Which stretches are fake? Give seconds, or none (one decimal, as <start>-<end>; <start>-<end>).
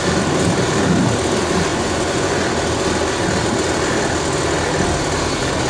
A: 1.7-2.5